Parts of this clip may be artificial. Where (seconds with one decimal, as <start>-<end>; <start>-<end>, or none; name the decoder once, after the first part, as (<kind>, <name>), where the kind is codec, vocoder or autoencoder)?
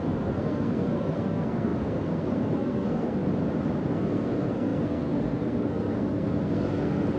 0.0-3.2 (codec, SNAC); 3.9-7.2